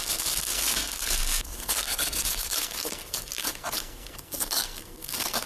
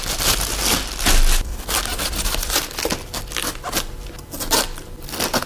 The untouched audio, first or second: second